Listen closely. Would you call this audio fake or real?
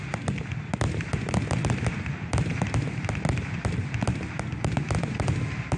real